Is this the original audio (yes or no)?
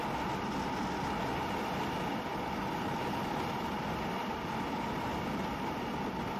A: yes